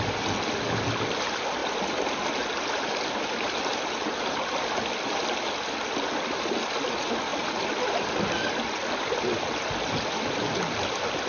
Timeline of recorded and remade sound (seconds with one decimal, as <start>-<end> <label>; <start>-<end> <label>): 0.0-11.3 recorded